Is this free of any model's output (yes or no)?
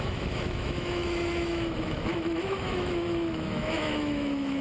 no